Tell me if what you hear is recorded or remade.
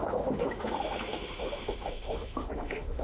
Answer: remade